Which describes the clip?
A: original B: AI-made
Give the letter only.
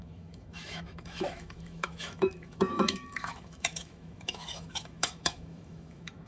B